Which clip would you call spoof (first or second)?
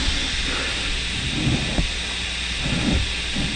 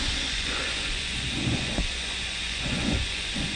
second